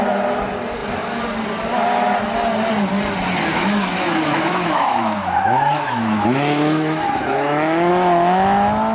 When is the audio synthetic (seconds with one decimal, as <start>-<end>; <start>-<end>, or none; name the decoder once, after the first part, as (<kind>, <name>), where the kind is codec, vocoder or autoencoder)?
3.5-7.9 (autoencoder, DAC-VAE)